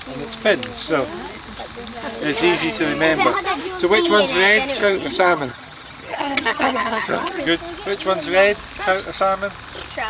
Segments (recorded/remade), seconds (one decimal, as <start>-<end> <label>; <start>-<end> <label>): 0.0-4.8 recorded; 4.8-7.4 remade; 7.4-10.1 recorded